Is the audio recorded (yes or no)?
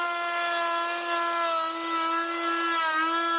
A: yes